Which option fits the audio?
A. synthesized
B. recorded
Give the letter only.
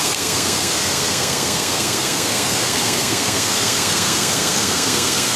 A